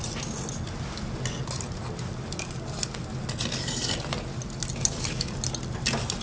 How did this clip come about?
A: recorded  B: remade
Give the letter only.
A